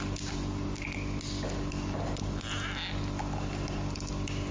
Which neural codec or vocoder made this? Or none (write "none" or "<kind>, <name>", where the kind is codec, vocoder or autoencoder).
none